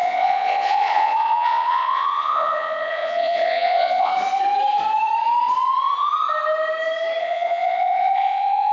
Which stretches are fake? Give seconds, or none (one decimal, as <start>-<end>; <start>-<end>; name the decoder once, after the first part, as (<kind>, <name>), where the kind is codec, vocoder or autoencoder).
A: 0.0-4.1 (vocoder, Vocos); 7.2-8.7